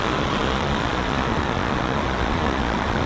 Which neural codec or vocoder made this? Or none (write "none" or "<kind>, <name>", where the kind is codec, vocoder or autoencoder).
vocoder, Vocos